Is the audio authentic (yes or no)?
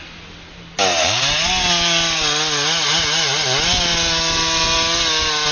yes